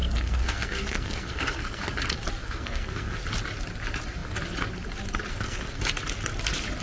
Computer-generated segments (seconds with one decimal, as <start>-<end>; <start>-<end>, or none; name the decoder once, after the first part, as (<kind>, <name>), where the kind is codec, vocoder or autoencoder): 0.0-1.8 (codec, SNAC); 2.4-3.2; 5.3-5.8